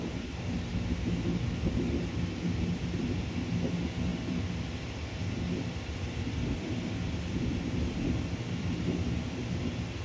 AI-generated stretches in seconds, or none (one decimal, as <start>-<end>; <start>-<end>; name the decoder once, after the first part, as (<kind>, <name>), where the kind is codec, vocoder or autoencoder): 4.1-6.7 (vocoder, BigVGAN v2)